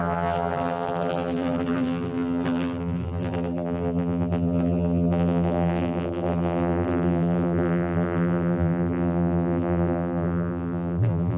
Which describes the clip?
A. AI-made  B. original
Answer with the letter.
A